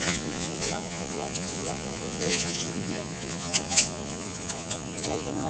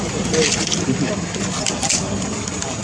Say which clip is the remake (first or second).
first